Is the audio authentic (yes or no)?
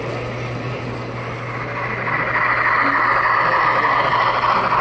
yes